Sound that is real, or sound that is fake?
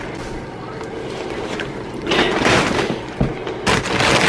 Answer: real